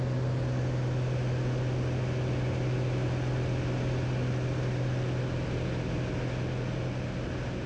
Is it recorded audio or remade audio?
recorded